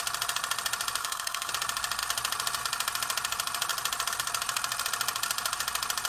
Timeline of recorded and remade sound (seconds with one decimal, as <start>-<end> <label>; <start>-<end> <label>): 0.0-1.0 recorded; 1.0-1.5 remade; 1.5-6.1 recorded